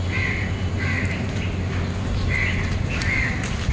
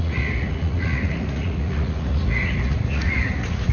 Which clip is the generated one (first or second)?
second